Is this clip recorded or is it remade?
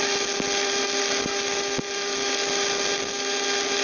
recorded